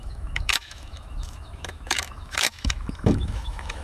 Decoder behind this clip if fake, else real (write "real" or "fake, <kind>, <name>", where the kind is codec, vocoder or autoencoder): fake, autoencoder, DAC-VAE